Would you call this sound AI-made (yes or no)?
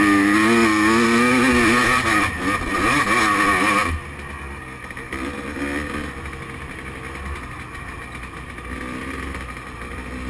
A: no